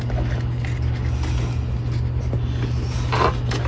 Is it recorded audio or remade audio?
recorded